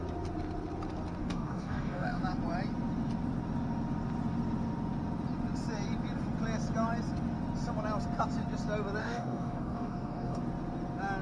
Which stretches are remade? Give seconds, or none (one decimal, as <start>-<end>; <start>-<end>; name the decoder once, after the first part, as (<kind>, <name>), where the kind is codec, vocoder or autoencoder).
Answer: 1.2-2.2 (codec, DAC); 9.0-10.4